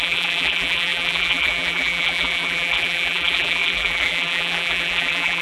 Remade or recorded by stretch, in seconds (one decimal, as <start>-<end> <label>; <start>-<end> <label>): 0.0-5.4 remade